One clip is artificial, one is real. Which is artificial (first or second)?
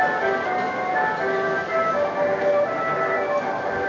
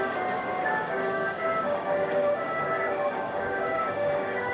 second